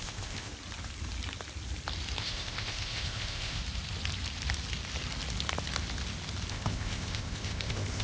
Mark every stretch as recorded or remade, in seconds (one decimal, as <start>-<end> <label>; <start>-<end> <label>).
0.0-0.5 remade; 0.5-2.2 recorded; 2.2-3.6 remade; 3.6-6.5 recorded; 6.5-8.0 remade